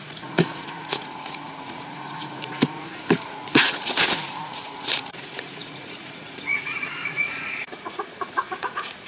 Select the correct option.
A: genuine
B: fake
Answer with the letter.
B